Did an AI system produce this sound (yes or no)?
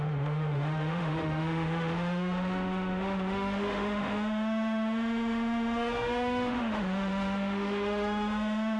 yes